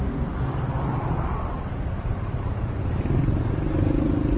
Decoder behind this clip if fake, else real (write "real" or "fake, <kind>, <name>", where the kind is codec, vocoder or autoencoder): real